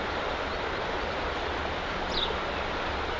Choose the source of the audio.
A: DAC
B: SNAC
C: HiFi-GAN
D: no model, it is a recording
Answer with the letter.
D